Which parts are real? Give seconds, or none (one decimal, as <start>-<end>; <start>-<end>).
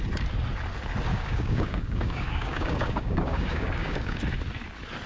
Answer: 0.0-1.1; 4.2-5.1